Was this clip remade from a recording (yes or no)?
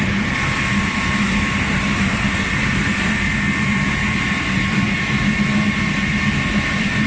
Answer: no